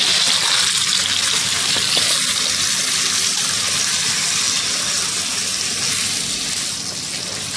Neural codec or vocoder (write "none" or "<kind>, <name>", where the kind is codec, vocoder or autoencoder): none